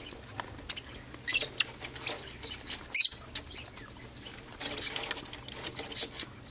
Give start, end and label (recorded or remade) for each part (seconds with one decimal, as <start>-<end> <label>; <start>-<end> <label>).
0.0-6.5 recorded